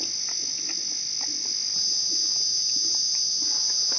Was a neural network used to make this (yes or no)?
no